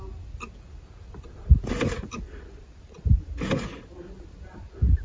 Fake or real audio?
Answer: real